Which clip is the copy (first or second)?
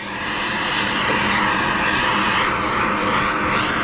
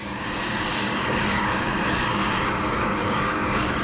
second